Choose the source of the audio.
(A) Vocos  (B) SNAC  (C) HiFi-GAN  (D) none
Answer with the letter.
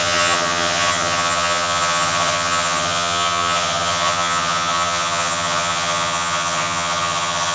C